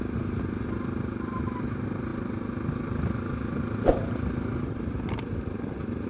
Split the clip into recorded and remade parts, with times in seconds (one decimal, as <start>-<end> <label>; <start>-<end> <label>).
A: 0.0-6.1 recorded